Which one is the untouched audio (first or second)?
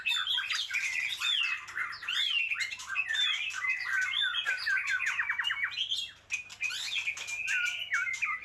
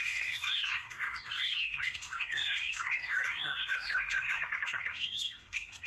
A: first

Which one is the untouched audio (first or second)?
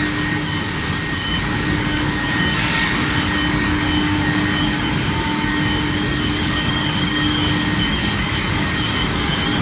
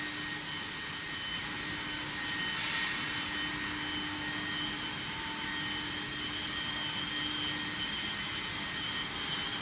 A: second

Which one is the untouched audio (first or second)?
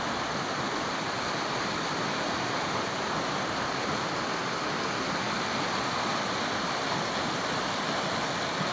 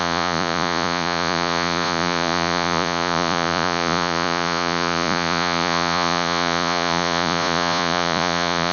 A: first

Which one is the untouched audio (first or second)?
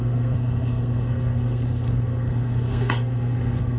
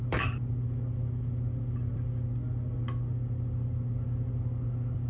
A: second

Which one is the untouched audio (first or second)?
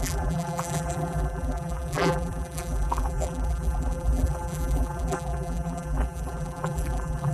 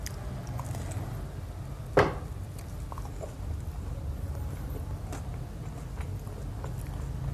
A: second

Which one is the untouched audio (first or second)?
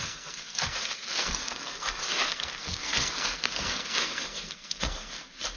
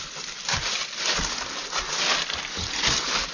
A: second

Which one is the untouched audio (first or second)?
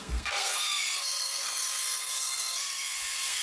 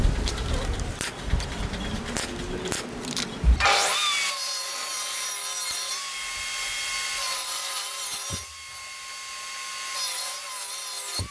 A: second